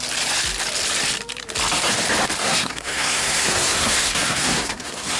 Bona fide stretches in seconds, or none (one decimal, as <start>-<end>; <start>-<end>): 0.0-2.4